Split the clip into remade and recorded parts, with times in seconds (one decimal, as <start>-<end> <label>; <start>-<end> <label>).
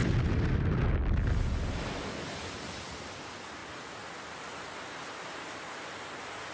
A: 0.0-6.5 recorded